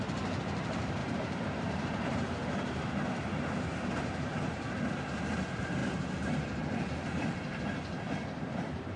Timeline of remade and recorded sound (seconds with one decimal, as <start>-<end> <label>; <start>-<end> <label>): 0.0-9.0 remade